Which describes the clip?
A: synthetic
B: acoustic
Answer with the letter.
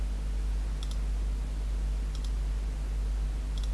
B